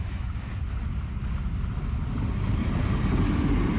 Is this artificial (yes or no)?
no